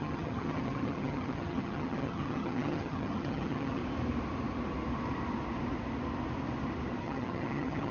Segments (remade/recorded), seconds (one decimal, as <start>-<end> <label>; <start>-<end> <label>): 0.0-3.8 remade; 3.8-7.0 recorded; 7.0-7.9 remade